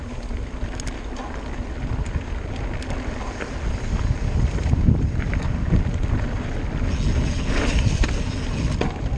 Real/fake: real